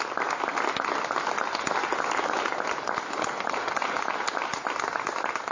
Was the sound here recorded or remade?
recorded